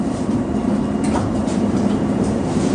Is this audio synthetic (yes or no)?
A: yes